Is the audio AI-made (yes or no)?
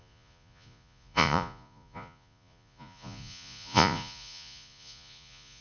yes